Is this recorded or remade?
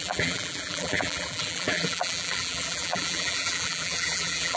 remade